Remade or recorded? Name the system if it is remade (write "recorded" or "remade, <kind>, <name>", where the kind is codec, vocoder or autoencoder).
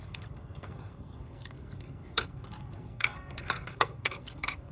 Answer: remade, codec, SNAC